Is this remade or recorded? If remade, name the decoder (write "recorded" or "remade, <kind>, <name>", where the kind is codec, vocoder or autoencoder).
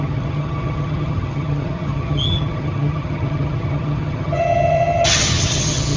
remade, vocoder, HiFi-GAN